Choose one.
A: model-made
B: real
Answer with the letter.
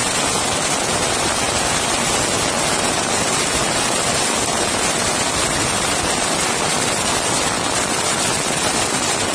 B